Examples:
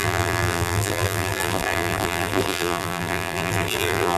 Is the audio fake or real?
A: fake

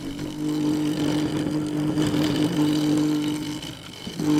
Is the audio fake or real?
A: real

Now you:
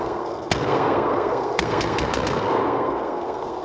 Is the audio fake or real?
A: fake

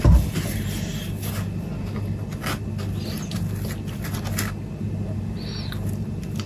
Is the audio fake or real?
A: real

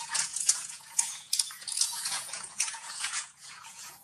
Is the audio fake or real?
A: fake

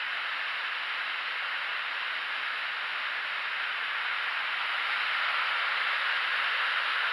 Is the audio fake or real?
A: real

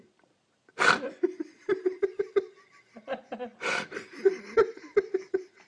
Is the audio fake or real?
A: fake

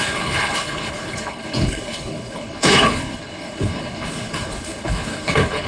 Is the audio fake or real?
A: fake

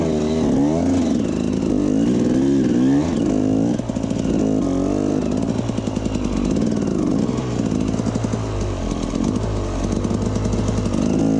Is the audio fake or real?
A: real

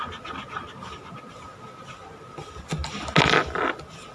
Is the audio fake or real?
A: real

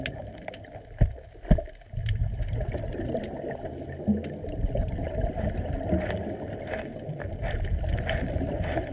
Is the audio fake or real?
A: real